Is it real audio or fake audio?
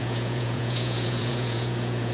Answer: fake